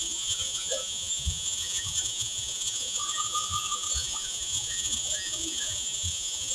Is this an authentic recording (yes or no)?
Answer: no